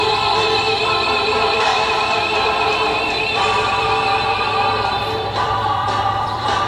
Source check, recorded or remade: remade